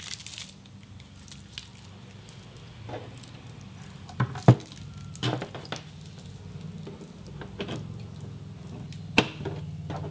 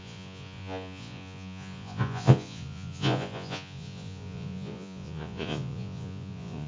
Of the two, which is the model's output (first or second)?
second